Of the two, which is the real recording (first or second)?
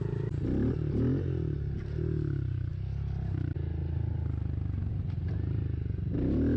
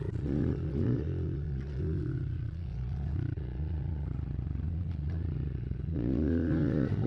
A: first